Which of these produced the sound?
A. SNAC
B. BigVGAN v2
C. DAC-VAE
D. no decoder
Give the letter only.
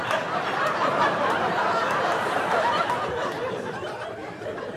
B